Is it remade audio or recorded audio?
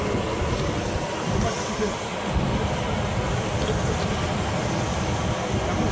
recorded